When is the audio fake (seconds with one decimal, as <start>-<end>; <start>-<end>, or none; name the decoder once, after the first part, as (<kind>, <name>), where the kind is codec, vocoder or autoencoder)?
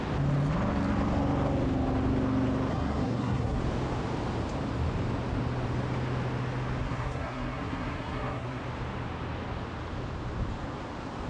2.7-3.6 (codec, SNAC); 6.8-8.6